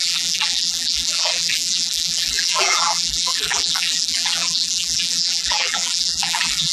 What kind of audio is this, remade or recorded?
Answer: remade